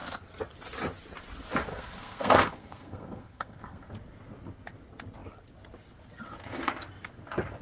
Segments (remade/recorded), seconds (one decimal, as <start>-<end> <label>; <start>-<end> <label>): 0.0-1.7 recorded; 1.7-3.9 remade; 3.9-7.6 recorded